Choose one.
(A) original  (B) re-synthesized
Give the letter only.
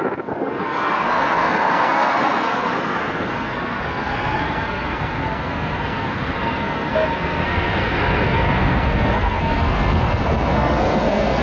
B